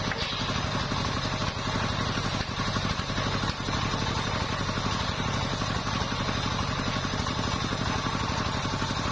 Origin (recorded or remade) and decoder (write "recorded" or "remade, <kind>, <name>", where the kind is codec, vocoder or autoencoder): recorded